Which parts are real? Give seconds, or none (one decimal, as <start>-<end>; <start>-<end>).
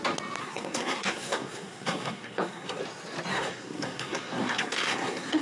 0.0-0.4; 2.8-3.3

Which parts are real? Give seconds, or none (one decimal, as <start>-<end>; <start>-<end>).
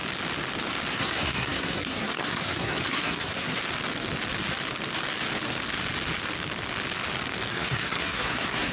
0.0-0.9; 3.6-7.5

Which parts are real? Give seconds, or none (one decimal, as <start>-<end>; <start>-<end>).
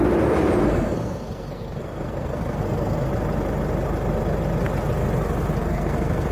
0.0-0.6; 3.1-5.6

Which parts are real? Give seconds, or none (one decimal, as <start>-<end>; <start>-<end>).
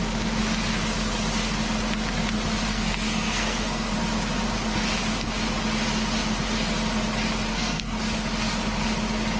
0.0-2.7; 3.9-7.5; 8.0-9.4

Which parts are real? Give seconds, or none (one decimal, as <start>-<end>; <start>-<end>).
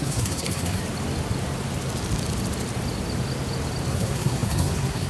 0.8-3.9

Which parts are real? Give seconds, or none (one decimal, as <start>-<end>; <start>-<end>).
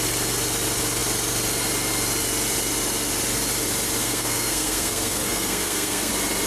0.0-4.0; 6.1-6.5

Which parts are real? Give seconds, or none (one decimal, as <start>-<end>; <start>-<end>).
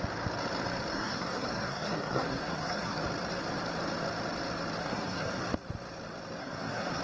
0.0-0.9; 3.0-4.8; 5.4-6.4